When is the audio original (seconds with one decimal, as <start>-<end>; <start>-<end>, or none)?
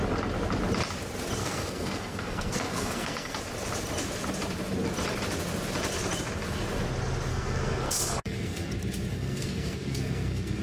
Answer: 0.0-1.4; 3.4-7.3; 8.7-9.1